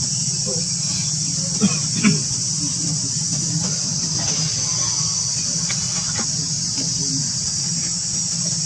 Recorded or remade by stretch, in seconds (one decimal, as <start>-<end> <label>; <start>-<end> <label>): 0.0-8.7 recorded